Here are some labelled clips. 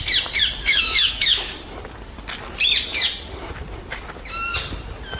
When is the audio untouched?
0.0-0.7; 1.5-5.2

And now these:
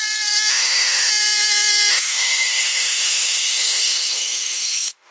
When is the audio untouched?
0.0-0.5; 1.1-1.9

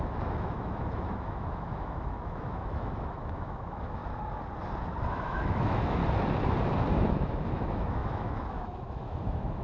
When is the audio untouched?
4.0-5.1; 6.0-6.9

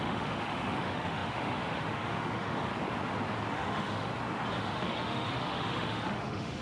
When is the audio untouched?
2.7-3.5; 4.1-4.6

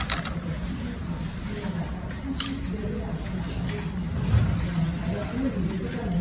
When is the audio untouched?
0.0-6.2

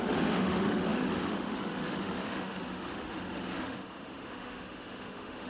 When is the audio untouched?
none

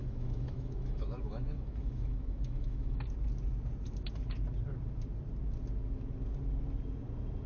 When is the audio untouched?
3.0-7.5